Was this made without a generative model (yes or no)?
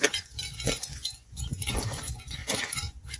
no